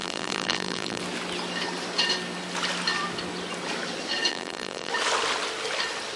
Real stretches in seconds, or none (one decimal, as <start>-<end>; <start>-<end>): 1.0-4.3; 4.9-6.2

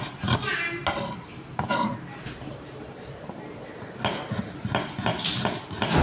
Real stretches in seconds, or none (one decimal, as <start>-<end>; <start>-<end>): 0.0-6.0

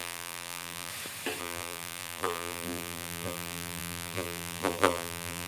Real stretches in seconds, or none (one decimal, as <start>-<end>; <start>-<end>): 0.9-1.4

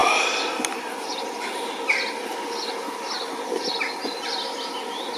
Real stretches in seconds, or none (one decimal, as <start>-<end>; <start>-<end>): 1.6-5.2